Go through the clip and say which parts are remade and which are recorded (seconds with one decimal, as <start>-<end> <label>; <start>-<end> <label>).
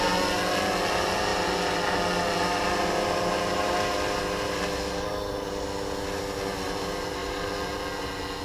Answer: 0.0-8.4 recorded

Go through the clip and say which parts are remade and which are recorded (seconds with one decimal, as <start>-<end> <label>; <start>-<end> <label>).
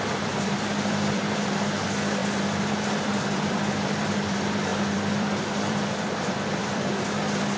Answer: 0.0-7.6 remade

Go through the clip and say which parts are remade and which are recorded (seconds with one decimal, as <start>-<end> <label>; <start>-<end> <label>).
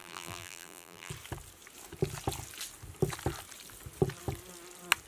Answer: 0.0-1.1 remade; 1.1-5.1 recorded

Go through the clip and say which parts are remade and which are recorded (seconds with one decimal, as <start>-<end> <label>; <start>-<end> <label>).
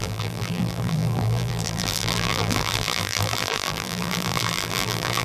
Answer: 0.0-5.2 remade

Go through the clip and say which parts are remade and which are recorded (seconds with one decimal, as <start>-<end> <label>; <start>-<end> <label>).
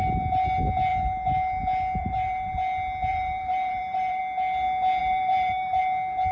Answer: 0.0-2.0 recorded; 2.0-2.5 remade; 2.5-3.1 recorded; 3.1-4.2 remade; 4.2-5.0 recorded; 5.0-5.8 remade; 5.8-6.3 recorded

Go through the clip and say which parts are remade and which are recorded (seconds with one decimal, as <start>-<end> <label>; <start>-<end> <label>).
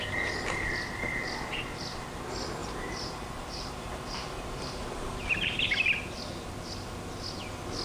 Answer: 0.0-2.6 recorded; 2.6-5.6 remade; 5.6-7.8 recorded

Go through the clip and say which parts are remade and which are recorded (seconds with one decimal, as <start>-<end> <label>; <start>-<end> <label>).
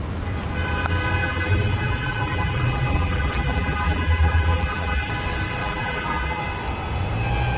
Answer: 0.0-1.2 recorded; 1.2-5.1 remade; 5.1-5.6 recorded; 5.6-6.4 remade; 6.4-7.6 recorded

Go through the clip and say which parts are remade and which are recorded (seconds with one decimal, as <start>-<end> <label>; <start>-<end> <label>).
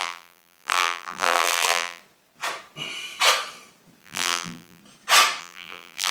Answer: 0.0-2.0 remade; 2.0-4.0 recorded; 4.0-4.8 remade; 4.8-5.4 recorded; 5.4-6.1 remade